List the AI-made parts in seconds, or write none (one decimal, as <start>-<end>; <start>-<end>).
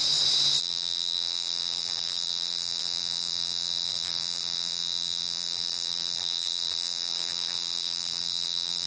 0.6-8.9